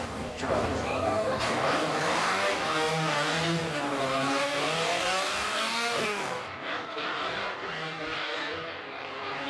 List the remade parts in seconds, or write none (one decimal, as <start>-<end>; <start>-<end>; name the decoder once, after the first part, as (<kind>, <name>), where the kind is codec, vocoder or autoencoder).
0.0-9.5 (codec, DAC)